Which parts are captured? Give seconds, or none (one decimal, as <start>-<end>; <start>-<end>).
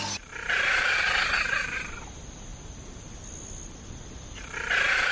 2.5-4.1